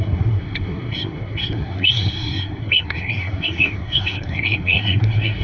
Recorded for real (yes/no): no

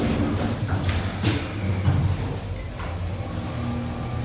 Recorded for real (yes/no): yes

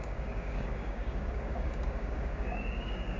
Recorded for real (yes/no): no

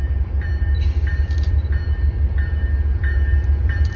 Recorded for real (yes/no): no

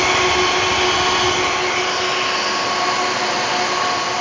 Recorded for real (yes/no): yes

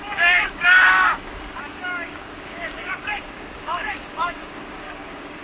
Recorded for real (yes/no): no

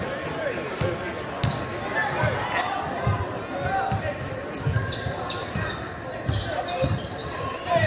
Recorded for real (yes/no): yes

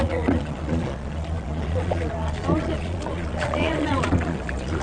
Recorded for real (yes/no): no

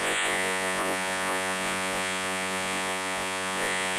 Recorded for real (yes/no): no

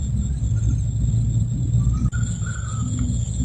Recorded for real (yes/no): yes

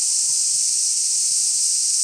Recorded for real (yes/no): yes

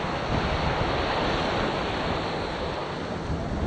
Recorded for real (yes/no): yes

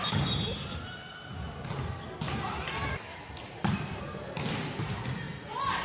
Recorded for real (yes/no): yes